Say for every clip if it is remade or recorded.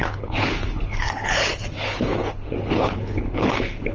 remade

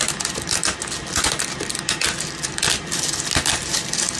recorded